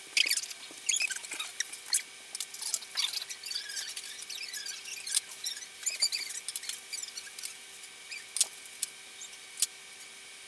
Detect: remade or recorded recorded